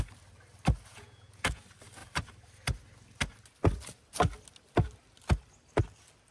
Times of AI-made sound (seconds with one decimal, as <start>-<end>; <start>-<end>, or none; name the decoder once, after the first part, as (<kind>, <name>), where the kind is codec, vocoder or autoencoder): 0.9-1.6 (vocoder, Vocos)